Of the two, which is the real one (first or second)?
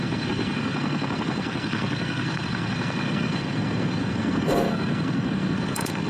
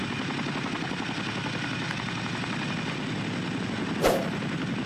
second